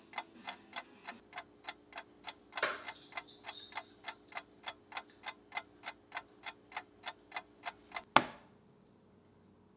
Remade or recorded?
recorded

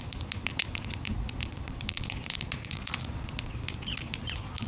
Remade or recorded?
remade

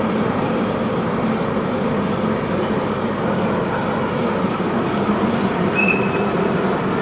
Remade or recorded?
remade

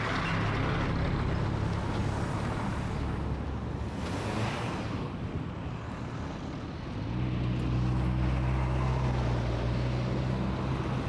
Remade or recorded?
recorded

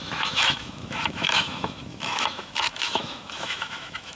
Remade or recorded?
remade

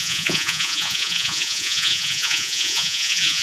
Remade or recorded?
remade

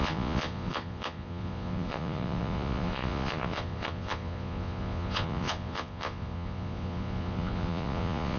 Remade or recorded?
remade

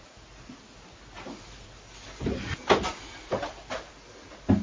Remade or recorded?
recorded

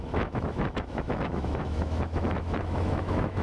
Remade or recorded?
remade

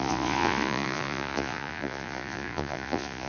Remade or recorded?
remade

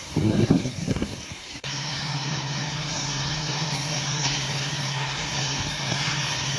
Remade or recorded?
remade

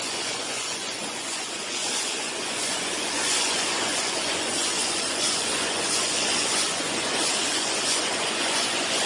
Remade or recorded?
remade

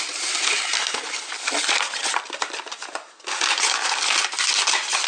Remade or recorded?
recorded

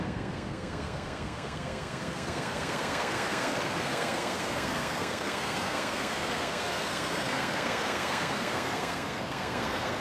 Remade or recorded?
remade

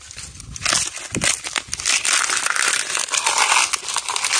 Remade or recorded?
recorded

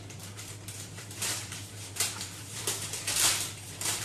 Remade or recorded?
remade